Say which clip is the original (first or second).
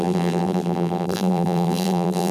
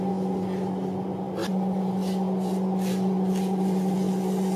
second